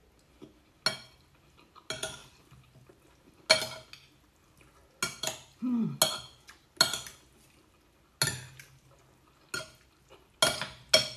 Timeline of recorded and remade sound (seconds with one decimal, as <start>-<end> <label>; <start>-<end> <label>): 0.0-11.2 recorded